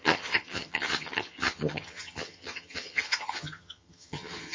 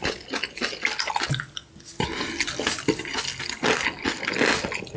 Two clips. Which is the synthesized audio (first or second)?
first